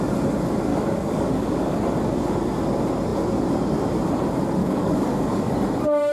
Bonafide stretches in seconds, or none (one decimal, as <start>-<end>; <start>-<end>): 0.0-0.7; 1.8-4.6; 5.5-6.1